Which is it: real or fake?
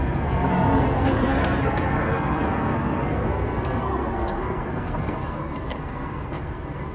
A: fake